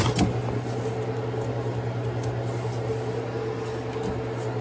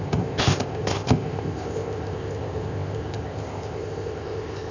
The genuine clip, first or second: first